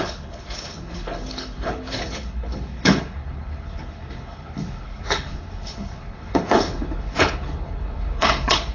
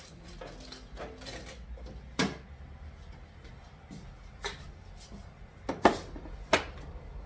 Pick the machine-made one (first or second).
first